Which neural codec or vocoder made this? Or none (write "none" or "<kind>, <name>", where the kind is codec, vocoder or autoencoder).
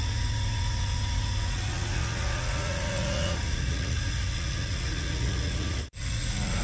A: vocoder, Vocos